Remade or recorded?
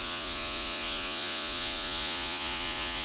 remade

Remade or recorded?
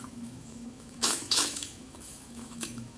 remade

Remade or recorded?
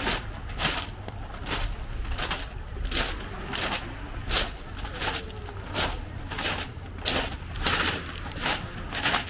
recorded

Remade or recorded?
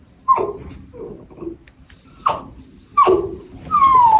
recorded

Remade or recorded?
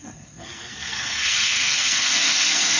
remade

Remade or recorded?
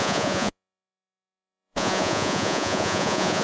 remade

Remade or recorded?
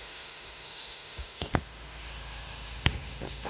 remade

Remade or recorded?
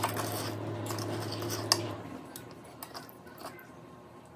recorded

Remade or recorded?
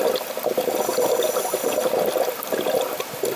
recorded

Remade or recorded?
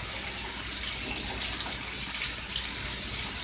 recorded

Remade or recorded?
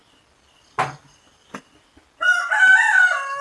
recorded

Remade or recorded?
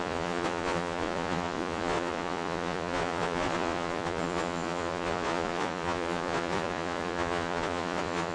remade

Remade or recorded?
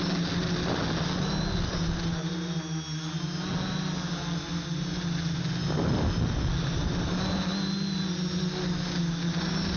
recorded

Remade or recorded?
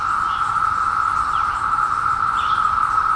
recorded